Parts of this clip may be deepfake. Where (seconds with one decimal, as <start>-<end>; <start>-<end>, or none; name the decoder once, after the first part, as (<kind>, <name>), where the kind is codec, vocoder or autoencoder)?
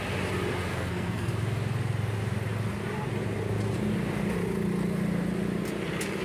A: 0.7-1.3 (codec, SNAC)